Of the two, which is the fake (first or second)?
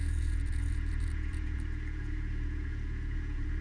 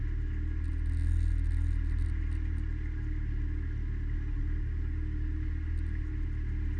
first